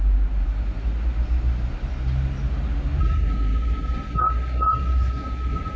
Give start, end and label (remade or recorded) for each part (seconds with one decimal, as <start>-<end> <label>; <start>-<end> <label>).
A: 0.0-3.0 recorded; 3.0-5.8 remade